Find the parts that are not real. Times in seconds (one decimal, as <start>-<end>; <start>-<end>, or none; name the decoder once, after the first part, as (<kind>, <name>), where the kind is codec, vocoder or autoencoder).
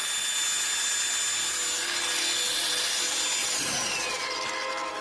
3.4-4.4 (vocoder, Vocos)